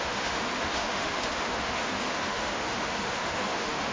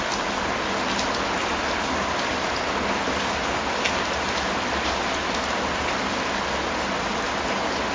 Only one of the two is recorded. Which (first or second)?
second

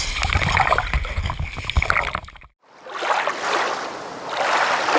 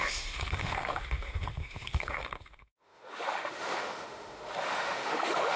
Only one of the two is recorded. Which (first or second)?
first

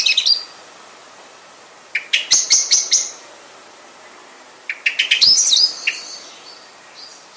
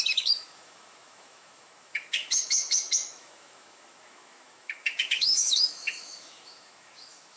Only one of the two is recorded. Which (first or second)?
first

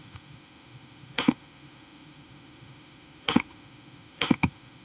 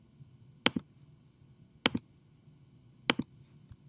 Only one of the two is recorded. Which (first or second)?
second